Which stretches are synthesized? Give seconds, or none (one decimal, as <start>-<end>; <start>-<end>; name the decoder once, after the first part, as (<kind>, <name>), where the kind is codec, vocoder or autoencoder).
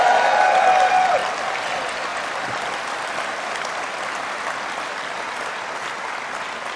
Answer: 1.2-1.7 (vocoder, BigVGAN v2); 2.1-5.5